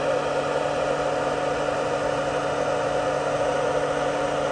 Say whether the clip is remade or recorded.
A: recorded